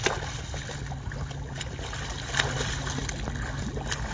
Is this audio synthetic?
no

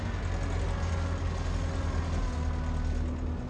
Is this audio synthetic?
no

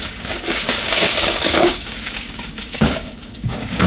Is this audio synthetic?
yes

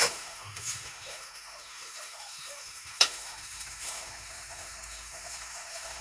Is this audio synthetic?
yes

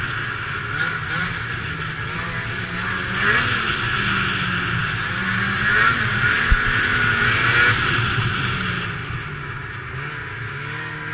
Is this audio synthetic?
no